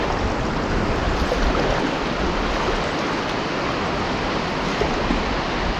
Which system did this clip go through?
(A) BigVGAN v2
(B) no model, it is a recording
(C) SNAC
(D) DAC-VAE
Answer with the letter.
B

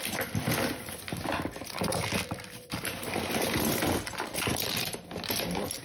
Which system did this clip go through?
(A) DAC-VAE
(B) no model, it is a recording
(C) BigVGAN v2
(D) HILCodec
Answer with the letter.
C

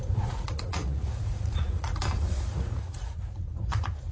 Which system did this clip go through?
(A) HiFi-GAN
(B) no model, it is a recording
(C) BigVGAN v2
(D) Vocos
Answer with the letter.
D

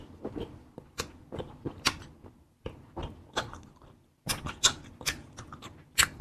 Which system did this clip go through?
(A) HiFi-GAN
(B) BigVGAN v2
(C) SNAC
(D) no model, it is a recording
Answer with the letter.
D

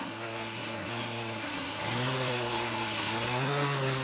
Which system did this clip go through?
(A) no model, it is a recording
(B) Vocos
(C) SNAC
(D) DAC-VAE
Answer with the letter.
C